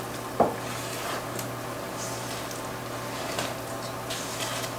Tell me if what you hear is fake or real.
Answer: real